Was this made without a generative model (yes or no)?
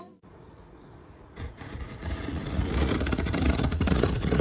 no